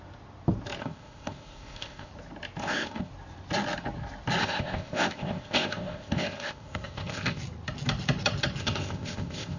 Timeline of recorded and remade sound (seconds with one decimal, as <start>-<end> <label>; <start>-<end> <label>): 0.0-0.8 recorded; 0.8-2.1 remade; 2.1-2.6 recorded; 2.6-3.1 remade; 3.1-4.4 recorded; 4.4-7.4 remade; 7.4-8.6 recorded; 8.6-9.6 remade